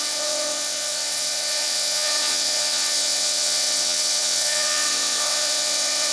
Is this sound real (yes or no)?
no